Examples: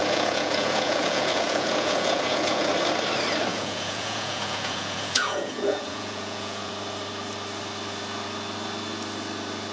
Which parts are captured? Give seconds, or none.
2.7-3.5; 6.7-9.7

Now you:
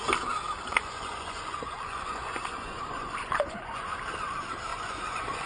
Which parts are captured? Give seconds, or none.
0.0-0.7; 4.0-4.7

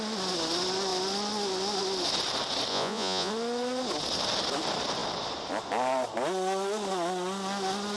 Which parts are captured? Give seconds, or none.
0.0-2.7; 3.3-8.0

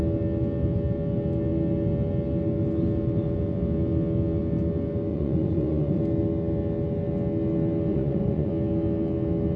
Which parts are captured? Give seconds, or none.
0.0-5.1; 6.0-7.9; 8.5-9.6

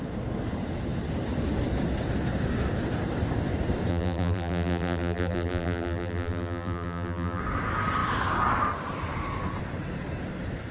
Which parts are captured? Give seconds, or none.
0.0-3.9; 7.4-10.7